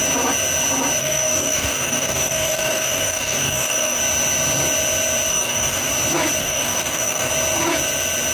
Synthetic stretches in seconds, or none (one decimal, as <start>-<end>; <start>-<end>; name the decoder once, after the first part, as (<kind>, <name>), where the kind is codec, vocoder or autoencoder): 1.0-4.0 (codec, DAC); 5.3-5.9; 6.4-7.3